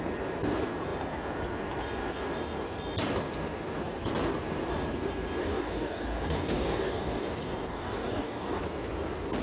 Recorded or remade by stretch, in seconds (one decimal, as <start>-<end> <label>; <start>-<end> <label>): 0.0-5.4 recorded; 5.4-7.2 remade; 7.2-7.7 recorded; 7.7-8.6 remade; 8.6-9.4 recorded